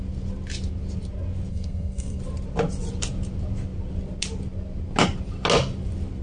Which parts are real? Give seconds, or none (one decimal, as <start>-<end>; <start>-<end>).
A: 0.0-1.5; 2.2-6.2